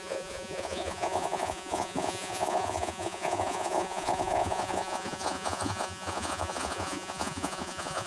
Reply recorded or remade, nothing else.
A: remade